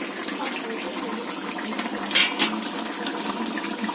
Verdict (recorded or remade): recorded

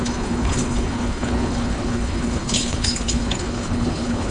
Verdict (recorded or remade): remade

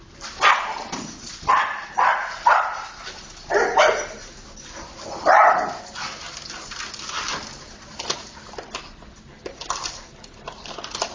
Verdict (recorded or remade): recorded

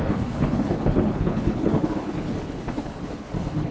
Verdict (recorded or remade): remade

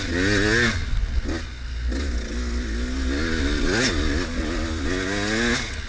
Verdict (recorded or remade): recorded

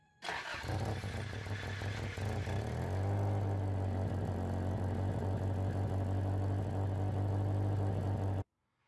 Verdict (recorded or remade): recorded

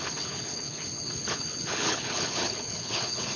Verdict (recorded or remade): remade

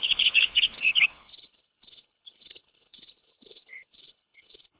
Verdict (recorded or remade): remade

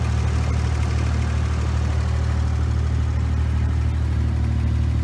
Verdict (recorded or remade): recorded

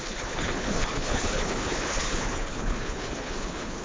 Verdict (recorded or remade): remade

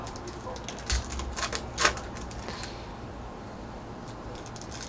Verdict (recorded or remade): recorded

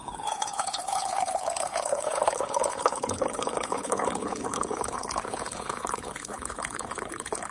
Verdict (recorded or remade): remade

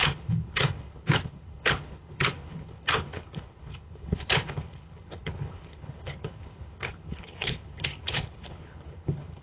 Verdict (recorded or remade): remade